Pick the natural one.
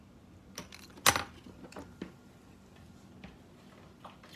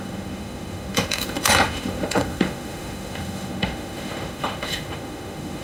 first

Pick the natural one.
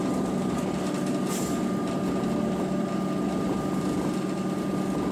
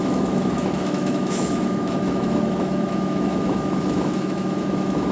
first